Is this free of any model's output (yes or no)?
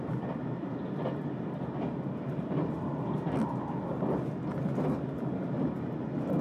yes